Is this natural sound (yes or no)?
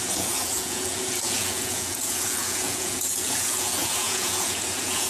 no